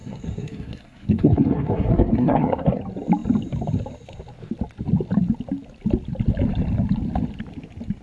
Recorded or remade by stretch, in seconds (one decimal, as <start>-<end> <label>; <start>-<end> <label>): 0.0-2.8 remade; 2.8-8.0 recorded